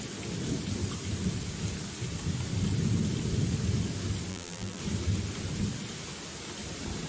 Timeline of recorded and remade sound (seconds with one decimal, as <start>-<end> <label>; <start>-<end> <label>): 0.0-4.3 recorded; 4.3-4.8 remade; 4.8-7.1 recorded